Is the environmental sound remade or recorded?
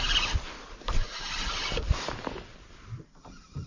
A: recorded